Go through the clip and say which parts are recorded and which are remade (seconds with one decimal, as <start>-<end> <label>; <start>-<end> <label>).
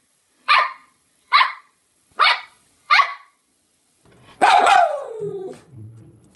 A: 0.0-6.4 remade